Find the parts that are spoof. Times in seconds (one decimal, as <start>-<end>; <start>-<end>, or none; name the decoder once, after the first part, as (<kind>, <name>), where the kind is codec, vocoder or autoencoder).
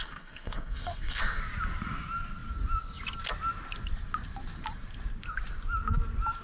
0.0-1.4 (codec, SNAC)